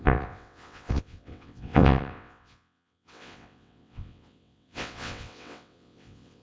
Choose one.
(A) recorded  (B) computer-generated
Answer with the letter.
B